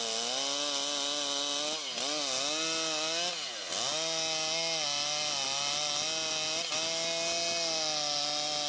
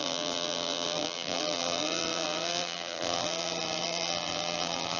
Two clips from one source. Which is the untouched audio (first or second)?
first